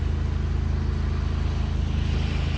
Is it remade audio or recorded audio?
recorded